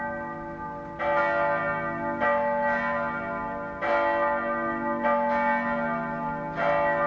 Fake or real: real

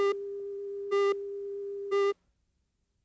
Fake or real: real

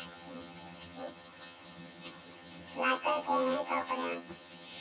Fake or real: fake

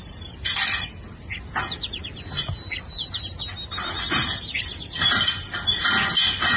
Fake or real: real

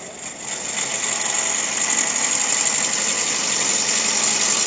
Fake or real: real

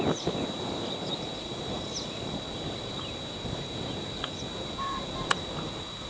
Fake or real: real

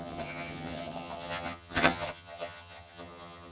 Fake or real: fake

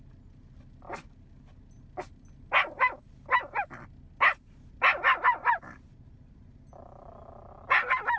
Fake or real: real